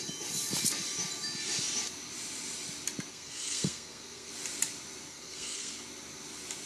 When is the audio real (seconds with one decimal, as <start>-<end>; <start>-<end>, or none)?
0.0-3.1; 4.3-5.1; 5.7-6.7

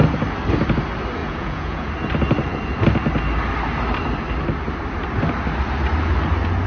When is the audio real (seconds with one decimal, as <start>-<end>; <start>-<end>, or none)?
0.0-1.2; 1.9-6.7

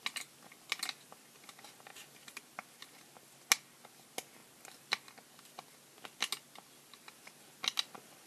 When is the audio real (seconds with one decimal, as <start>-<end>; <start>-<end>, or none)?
0.0-1.9; 2.8-4.4; 5.1-8.3